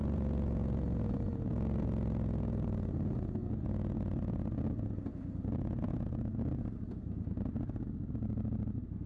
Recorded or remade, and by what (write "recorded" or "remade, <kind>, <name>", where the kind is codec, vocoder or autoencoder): recorded